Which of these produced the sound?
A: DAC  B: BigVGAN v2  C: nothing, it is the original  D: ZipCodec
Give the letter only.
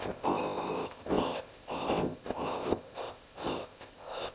D